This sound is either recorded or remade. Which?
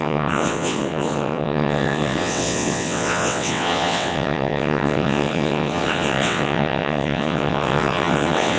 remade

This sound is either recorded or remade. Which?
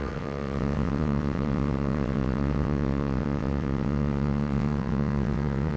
remade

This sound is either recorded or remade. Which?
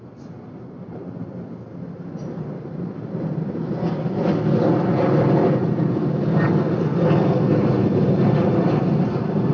recorded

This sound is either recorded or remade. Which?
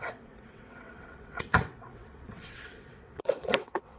remade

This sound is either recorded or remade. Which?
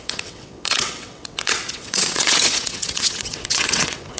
remade